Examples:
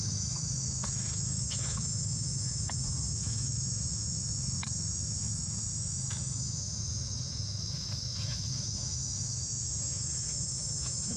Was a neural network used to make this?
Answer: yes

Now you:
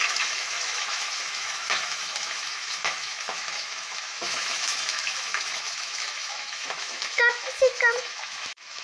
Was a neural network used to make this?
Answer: yes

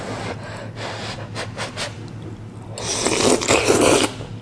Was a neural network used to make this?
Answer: no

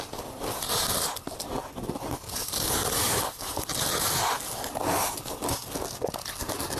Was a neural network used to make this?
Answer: no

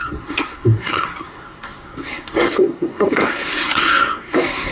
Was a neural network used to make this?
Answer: yes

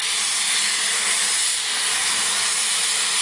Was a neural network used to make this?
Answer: no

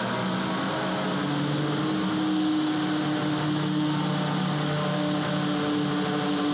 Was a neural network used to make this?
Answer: no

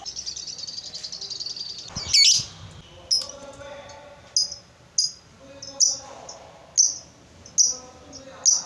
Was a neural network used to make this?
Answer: no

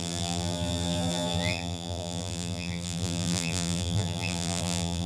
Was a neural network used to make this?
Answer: yes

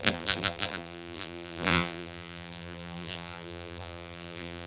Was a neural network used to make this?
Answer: yes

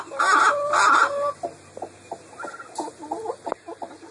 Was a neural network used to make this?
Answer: no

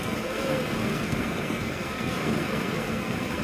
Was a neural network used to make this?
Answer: yes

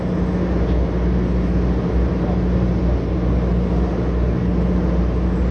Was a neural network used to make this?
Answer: no